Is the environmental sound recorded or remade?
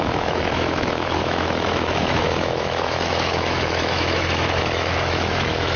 remade